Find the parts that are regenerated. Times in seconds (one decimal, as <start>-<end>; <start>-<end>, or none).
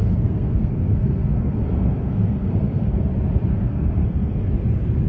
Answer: 0.0-3.1; 3.5-4.5